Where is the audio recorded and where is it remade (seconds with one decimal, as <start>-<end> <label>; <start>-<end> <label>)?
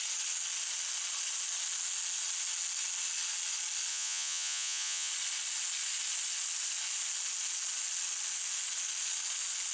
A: 0.0-3.9 recorded; 3.9-5.1 remade; 5.1-9.7 recorded